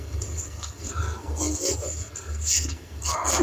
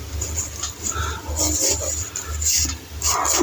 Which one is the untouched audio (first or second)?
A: second